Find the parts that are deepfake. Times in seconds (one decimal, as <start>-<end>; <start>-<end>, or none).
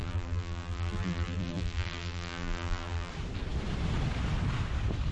0.0-3.1